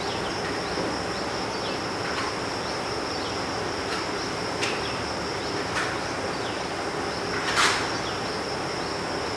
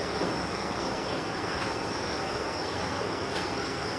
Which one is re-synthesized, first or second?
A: second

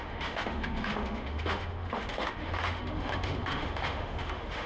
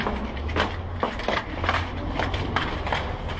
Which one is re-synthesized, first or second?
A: first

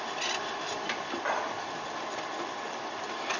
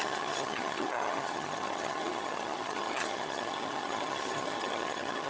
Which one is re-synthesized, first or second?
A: second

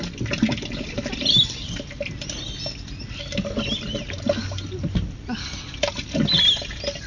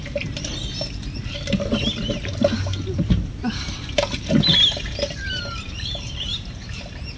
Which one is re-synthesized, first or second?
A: second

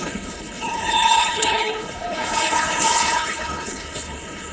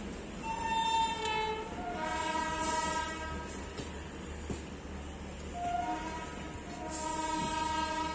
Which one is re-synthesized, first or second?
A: first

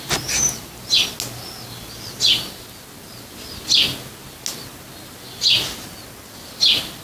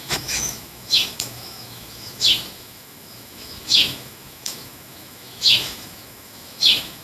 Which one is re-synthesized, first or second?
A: second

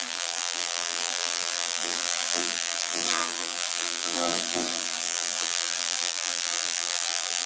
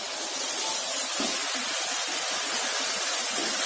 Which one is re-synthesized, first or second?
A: first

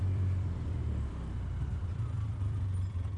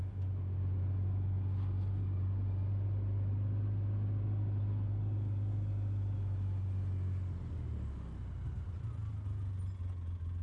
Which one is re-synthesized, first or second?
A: first